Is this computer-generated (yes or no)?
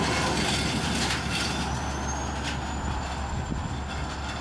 no